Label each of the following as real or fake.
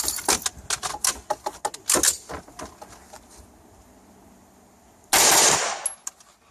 real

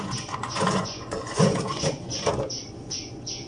fake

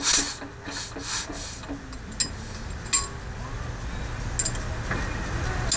real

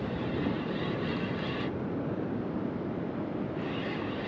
real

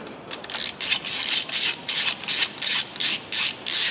fake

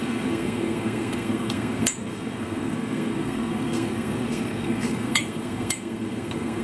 fake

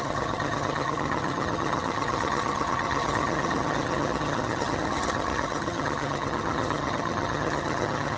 fake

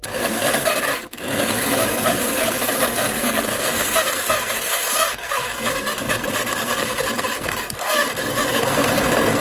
fake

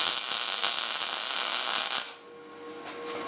real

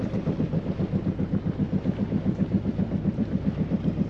fake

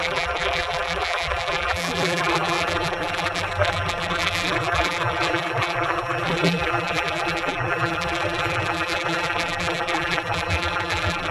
fake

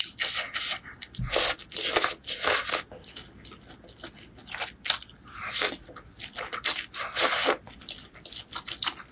real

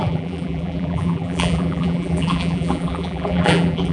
fake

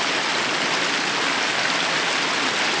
real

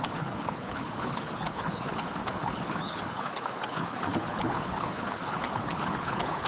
fake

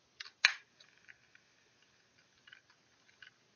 real